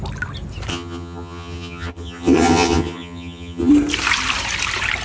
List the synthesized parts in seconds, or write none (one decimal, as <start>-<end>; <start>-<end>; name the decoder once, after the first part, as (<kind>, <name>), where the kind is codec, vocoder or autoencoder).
0.7-3.7 (vocoder, HiFi-GAN)